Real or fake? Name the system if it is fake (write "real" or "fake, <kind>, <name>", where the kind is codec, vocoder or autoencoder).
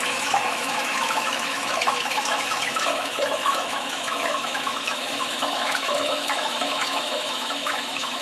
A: fake, autoencoder, DAC-VAE